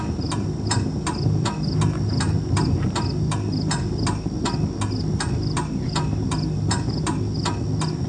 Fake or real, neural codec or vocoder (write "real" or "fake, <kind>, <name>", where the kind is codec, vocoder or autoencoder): real